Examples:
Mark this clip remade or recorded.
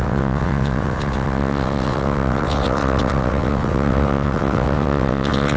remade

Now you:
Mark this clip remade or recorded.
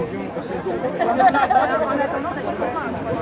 recorded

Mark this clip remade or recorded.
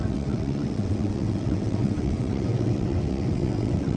remade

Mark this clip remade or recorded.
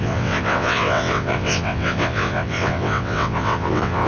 remade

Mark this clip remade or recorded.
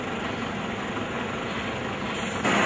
recorded